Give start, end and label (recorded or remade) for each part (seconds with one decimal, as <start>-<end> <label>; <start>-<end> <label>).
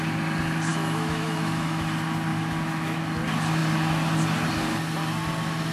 0.0-0.7 recorded; 0.7-1.9 remade; 1.9-2.3 recorded; 2.3-3.0 remade; 3.0-5.7 recorded